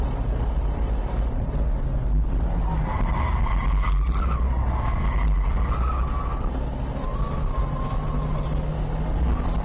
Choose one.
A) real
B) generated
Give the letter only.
A